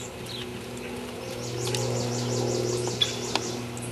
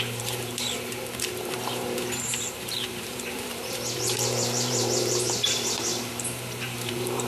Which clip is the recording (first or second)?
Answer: first